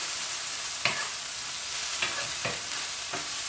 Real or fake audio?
real